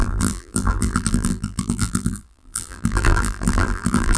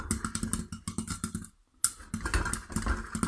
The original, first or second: second